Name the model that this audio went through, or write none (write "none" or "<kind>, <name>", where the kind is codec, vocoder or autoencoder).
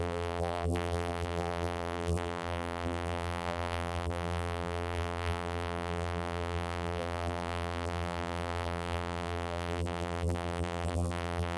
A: vocoder, BigVGAN v2